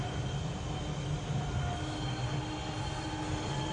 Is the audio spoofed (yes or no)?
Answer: no